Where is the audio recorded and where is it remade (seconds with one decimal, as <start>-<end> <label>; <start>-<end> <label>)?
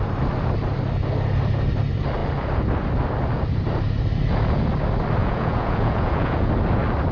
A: 0.0-5.2 recorded; 5.2-6.5 remade; 6.5-7.1 recorded